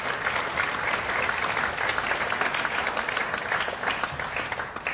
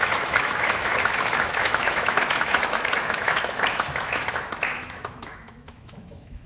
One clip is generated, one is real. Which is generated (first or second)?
second